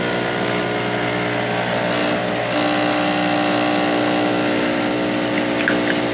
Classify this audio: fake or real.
real